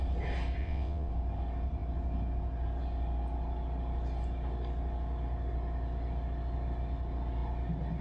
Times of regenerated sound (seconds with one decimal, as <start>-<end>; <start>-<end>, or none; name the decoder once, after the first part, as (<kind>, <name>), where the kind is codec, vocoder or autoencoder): 0.6-1.1 (vocoder, WaveNeXt)